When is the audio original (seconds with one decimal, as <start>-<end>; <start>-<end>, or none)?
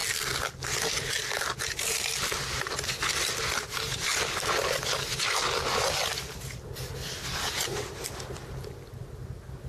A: 0.0-9.7